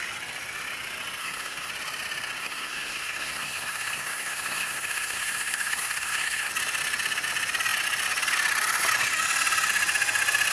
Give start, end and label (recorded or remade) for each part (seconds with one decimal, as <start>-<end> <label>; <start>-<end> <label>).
0.0-1.2 recorded; 1.2-1.7 remade; 1.7-2.4 recorded; 2.4-6.5 remade; 6.5-10.5 recorded